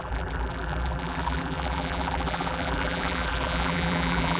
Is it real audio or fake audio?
fake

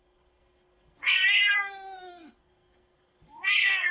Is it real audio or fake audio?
fake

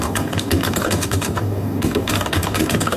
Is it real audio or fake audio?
fake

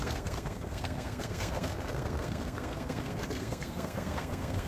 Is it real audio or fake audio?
fake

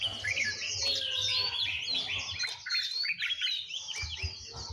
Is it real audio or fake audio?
real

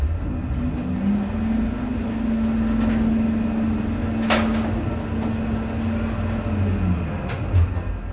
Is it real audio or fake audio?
real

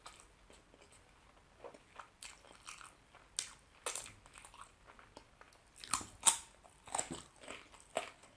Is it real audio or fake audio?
real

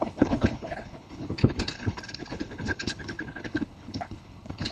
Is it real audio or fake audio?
fake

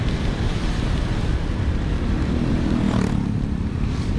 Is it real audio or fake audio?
fake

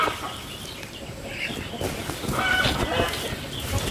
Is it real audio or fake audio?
real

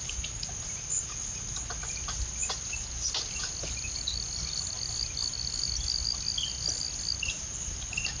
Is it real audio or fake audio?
real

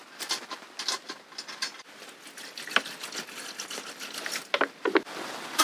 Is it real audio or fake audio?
real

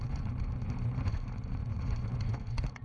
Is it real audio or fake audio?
fake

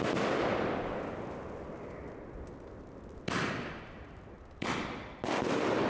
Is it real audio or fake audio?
real